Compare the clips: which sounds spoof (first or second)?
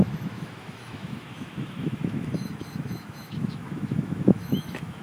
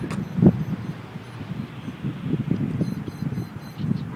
first